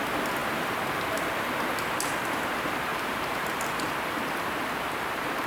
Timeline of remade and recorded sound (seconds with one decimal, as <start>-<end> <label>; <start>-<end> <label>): 0.0-2.9 recorded; 2.9-5.5 remade